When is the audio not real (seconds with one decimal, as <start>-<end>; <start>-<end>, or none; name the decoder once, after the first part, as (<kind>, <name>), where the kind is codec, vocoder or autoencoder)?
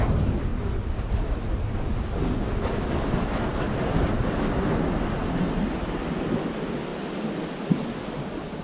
none